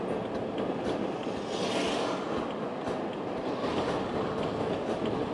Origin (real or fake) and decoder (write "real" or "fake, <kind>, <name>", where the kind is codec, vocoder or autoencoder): real